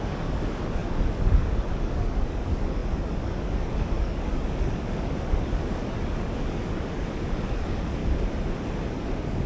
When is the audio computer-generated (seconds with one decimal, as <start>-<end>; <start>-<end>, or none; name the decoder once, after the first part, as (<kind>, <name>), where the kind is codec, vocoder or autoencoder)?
0.0-8.0 (codec, DAC); 8.9-9.5

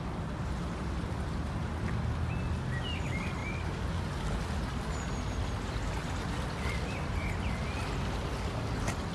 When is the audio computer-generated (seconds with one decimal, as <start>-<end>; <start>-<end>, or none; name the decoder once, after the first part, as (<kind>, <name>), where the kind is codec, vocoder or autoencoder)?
none